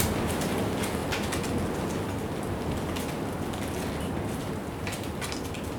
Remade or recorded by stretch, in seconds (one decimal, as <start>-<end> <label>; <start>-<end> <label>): 0.0-5.8 recorded